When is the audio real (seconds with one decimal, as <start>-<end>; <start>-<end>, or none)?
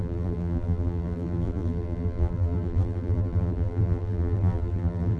none